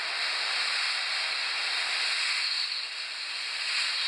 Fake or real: real